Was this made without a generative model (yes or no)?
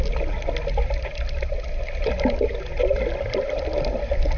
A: yes